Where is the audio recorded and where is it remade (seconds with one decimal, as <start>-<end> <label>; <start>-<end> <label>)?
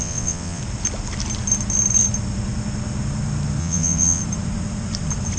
0.0-0.6 remade; 0.6-3.6 recorded; 3.6-4.2 remade; 4.2-5.4 recorded